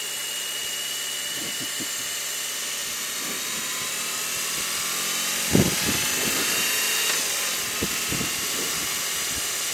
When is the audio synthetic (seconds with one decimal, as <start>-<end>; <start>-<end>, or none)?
none